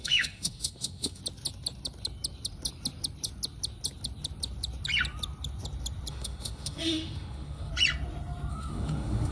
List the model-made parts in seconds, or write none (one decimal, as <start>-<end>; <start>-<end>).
0.0-1.2; 6.1-7.7; 8.5-9.3

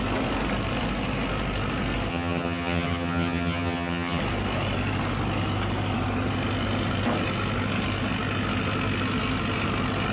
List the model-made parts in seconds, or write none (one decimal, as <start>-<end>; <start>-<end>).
2.1-4.2

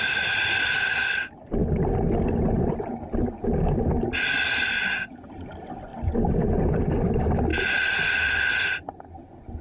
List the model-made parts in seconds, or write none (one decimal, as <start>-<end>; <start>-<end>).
none

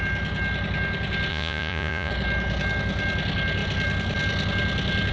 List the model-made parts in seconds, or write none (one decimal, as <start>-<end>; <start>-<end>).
1.3-2.1

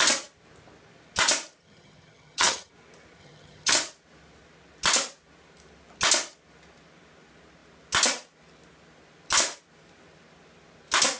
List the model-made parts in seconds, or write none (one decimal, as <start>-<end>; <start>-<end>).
1.6-2.7; 3.2-3.7